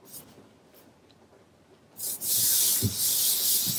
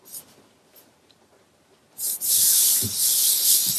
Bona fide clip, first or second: first